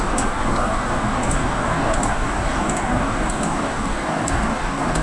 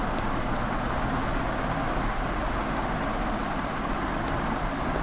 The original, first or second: second